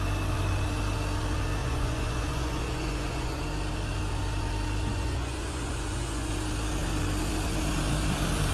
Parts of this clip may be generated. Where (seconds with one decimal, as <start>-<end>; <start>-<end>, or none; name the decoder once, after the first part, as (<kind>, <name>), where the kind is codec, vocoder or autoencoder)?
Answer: 1.6-3.4 (vocoder, Vocos); 4.9-6.3